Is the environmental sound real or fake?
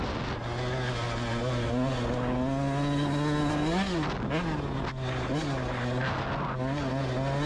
real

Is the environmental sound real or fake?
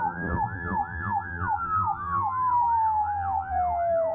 fake